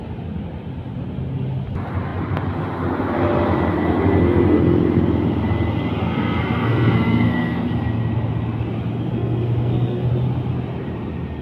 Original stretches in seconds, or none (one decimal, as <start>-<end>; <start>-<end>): 0.0-6.0; 7.7-9.1; 10.1-11.4